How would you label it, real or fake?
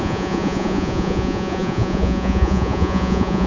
fake